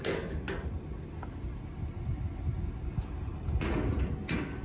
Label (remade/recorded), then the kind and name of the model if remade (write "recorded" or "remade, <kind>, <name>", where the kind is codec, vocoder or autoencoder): recorded